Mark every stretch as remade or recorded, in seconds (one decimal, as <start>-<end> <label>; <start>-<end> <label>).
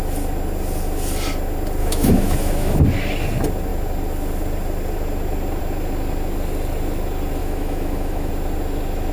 0.0-1.8 recorded; 1.8-2.8 remade; 2.8-7.4 recorded; 7.4-8.3 remade; 8.3-9.1 recorded